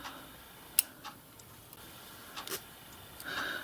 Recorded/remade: recorded